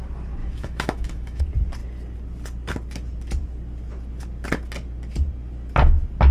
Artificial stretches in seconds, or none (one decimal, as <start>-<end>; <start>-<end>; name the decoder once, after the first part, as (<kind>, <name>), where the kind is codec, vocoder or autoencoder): 0.4-1.4 (autoencoder, DAC-VAE)